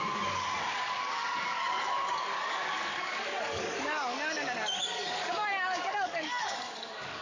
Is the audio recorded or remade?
remade